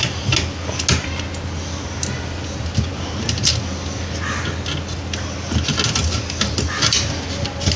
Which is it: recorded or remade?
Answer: recorded